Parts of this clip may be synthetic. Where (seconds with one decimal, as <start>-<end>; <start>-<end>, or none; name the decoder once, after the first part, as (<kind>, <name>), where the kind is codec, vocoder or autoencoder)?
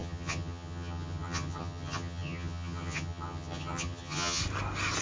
0.0-4.4 (vocoder, HiFi-GAN)